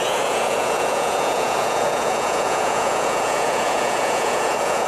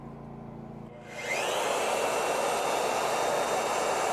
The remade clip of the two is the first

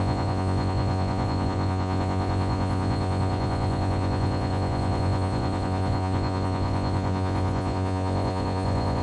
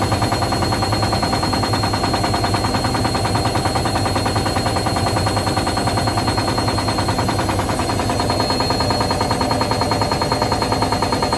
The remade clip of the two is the first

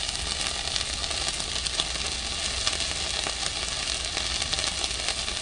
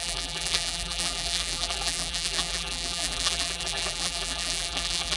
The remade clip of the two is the second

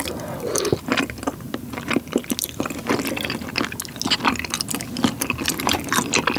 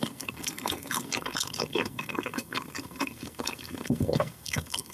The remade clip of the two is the second